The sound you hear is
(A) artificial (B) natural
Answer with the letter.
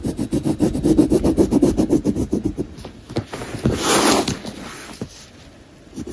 B